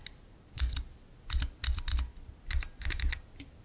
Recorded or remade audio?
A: recorded